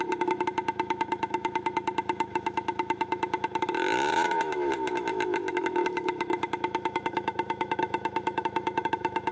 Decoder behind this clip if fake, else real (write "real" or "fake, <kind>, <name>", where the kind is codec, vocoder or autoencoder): fake, autoencoder, DAC-VAE